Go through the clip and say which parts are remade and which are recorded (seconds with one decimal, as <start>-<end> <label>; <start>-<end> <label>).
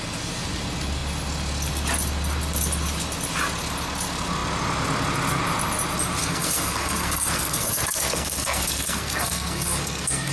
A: 0.0-6.2 recorded; 6.2-10.3 remade